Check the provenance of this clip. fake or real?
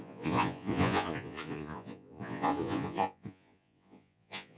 fake